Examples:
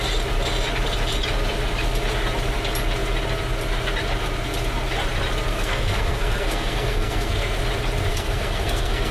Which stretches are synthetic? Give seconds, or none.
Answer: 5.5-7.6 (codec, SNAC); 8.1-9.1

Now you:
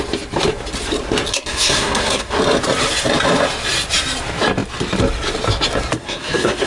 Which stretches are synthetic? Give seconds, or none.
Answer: 1.3-2.4 (codec, SNAC); 6.0-6.7

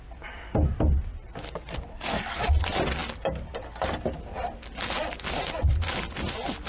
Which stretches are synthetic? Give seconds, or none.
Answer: 1.9-2.4 (codec, SNAC)

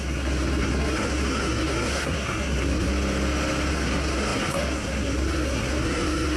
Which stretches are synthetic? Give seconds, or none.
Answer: 0.0-2.9 (codec, SNAC); 3.7-6.4

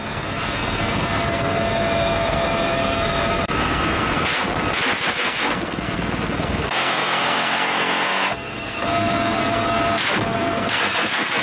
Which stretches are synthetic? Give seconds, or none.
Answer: 0.0-4.5 (codec, SNAC); 5.1-11.4